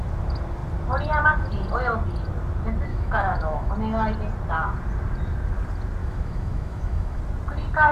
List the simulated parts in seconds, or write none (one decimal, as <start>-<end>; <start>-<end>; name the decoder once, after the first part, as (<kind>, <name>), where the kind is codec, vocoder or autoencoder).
2.9-3.7 (autoencoder, DAC-VAE); 6.0-7.2